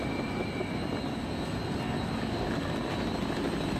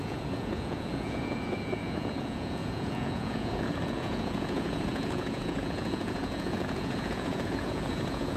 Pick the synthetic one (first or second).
second